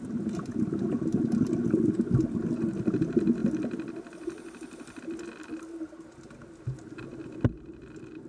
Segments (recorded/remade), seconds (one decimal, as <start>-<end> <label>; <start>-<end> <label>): 0.0-8.3 recorded